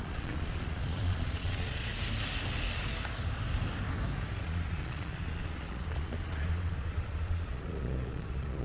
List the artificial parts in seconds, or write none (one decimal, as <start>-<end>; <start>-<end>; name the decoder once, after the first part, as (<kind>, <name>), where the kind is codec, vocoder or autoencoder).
0.0-1.9 (vocoder, Vocos); 4.4-8.6